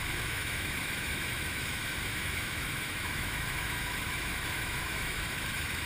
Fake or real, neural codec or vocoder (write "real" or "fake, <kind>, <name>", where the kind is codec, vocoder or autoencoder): fake, autoencoder, DAC-VAE